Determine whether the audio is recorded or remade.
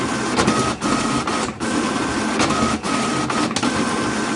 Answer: recorded